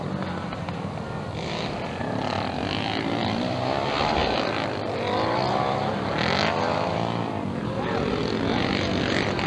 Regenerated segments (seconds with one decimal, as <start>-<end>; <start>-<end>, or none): none